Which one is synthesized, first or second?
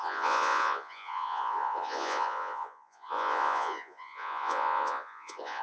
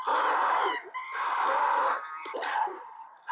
first